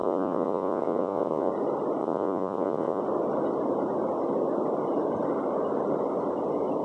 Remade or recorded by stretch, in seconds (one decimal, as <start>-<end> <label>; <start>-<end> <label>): 0.0-1.5 remade; 1.5-2.0 recorded; 2.0-3.0 remade; 3.0-6.8 recorded